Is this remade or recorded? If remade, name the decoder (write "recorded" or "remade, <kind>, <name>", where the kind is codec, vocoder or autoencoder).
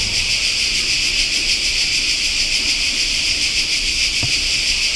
recorded